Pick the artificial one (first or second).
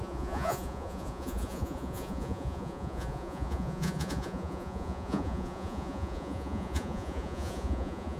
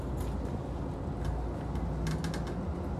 first